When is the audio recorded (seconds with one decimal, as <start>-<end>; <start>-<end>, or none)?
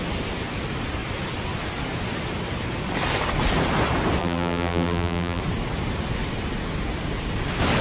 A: 0.0-4.2; 5.4-7.8